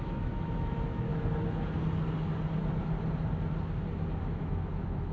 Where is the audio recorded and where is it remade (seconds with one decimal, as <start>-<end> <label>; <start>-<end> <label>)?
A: 0.0-1.1 remade; 1.1-4.2 recorded; 4.2-5.1 remade